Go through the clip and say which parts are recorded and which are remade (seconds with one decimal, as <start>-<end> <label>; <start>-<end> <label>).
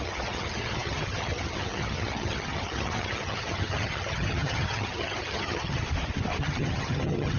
0.0-5.8 remade; 5.8-6.4 recorded; 6.4-7.4 remade